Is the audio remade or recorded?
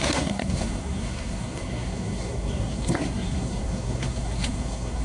remade